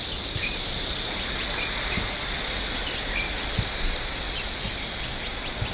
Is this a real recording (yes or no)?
yes